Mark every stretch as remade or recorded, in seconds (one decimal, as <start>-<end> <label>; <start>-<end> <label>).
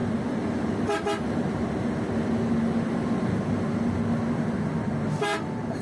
0.0-5.8 recorded